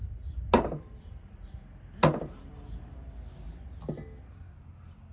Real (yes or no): yes